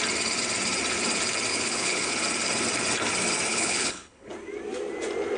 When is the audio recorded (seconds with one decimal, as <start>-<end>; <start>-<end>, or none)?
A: 0.0-1.5; 2.1-3.5; 4.3-5.4